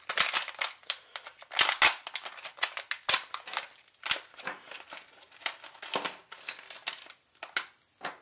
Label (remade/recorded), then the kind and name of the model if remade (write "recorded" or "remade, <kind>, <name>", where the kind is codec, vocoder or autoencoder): recorded